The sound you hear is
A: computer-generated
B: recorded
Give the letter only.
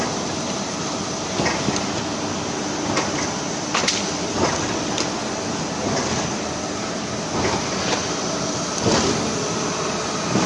B